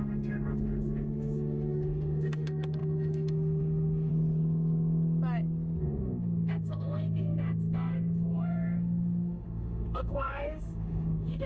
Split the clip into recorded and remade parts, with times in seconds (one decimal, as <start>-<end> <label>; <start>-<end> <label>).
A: 0.0-4.1 remade; 4.1-5.8 recorded; 5.8-11.5 remade